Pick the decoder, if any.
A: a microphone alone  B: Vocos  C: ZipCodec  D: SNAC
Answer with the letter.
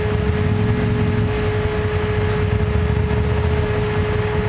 A